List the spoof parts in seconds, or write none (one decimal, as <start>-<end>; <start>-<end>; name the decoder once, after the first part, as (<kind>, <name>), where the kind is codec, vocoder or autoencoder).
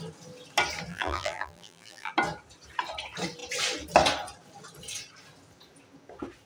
0.9-2.1 (vocoder, BigVGAN v2)